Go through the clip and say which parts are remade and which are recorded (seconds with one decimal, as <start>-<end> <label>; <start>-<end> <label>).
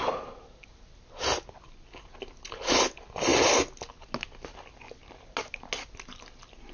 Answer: 0.0-6.7 recorded